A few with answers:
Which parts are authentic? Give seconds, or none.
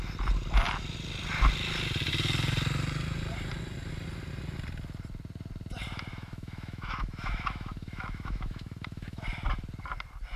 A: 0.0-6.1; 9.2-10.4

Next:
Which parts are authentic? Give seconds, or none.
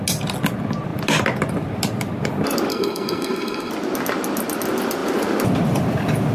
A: 0.0-2.7; 3.7-6.3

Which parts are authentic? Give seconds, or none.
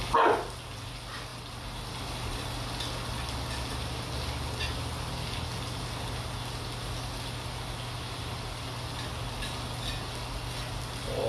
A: 0.0-11.3